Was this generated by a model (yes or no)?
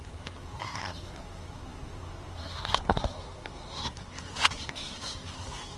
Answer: yes